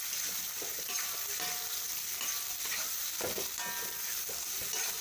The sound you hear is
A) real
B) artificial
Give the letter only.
A